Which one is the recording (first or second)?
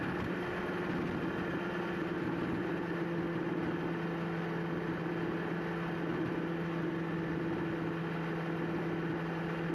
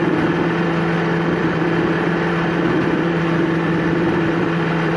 first